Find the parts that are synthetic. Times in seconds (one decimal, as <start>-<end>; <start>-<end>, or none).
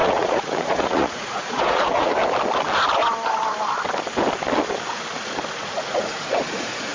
0.0-2.1; 5.6-6.9